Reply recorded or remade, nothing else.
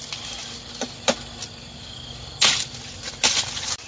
recorded